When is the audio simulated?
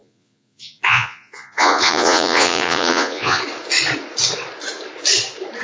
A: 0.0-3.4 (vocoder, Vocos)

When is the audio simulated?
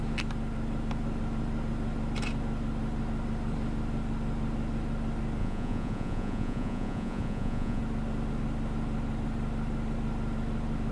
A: 5.4-7.8 (vocoder, Vocos)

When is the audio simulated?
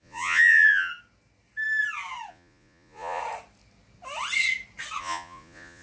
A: 0.0-0.9 (vocoder, Vocos); 2.3-3.2; 5.0-5.8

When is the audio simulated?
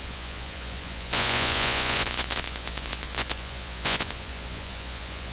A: 0.0-5.3 (vocoder, Vocos)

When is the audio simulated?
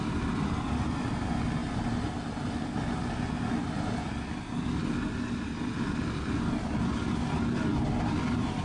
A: none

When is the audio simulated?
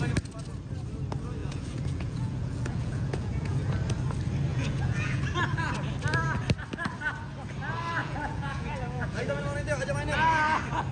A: 1.4-3.7 (vocoder, Vocos); 4.5-5.2; 8.0-9.4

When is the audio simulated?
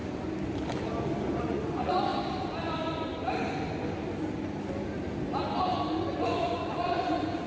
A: 1.4-2.1 (vocoder, Vocos); 6.2-7.5